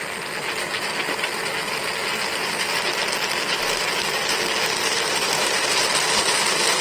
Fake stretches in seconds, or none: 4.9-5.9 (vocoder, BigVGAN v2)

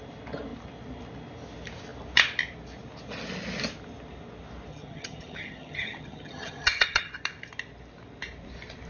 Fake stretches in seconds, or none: 4.7-7.1 (vocoder, HiFi-GAN)

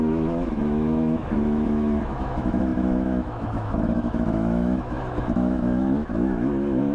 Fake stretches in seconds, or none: 0.0-6.9 (autoencoder, DAC-VAE)

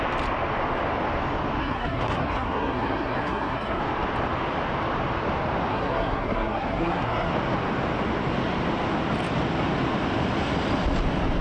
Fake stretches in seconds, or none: 1.6-3.8 (codec, SNAC); 5.7-7.3

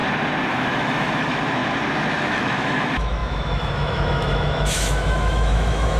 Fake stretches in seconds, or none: 0.5-1.6 (autoencoder, DAC-VAE); 2.2-6.0